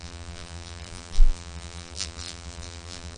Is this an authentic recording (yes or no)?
no